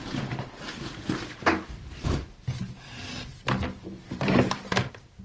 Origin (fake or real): fake